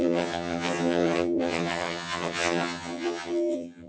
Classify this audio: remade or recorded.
remade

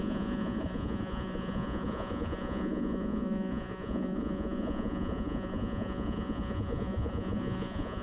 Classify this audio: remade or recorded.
remade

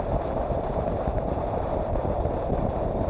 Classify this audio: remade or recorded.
remade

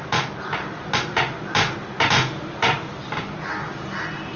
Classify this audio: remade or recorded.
recorded